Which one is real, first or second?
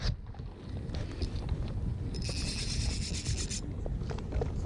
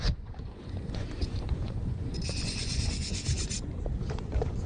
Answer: first